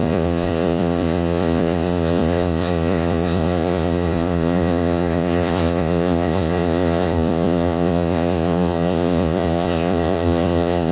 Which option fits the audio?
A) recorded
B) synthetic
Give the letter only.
B